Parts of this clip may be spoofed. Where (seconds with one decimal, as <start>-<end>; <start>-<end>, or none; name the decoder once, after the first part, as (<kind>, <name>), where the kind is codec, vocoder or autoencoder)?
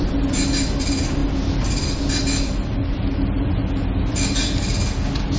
none